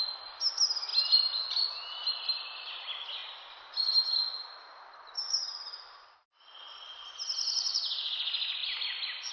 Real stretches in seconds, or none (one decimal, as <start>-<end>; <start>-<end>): 0.0-5.4; 6.4-8.6